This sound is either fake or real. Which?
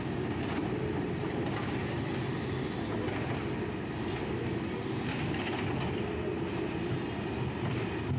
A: real